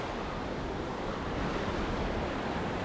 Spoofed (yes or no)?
no